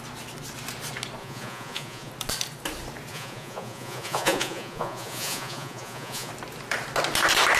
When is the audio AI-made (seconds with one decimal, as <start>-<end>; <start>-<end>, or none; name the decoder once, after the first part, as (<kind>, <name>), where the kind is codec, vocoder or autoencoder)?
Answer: 1.2-2.1 (vocoder, Vocos); 3.1-6.3